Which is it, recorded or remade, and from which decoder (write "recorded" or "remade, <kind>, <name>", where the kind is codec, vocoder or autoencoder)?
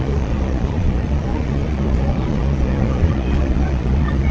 remade, vocoder, Vocos